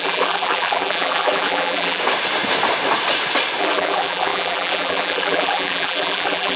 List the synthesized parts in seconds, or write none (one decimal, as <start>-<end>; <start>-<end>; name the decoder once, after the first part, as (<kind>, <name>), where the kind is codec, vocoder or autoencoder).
0.0-2.0 (vocoder, BigVGAN v2); 3.6-6.6

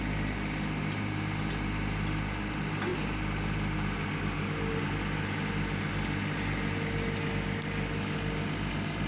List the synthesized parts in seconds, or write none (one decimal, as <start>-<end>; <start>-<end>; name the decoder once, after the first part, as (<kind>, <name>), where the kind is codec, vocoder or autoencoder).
none